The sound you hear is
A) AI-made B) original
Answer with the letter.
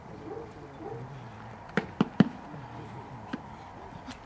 B